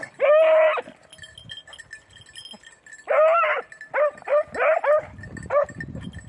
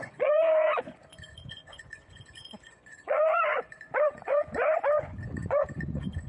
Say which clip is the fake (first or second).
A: second